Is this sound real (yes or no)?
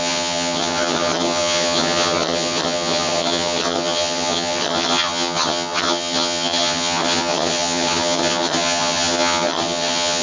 no